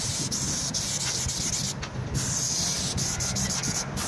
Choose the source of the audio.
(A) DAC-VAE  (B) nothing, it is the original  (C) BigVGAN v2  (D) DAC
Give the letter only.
B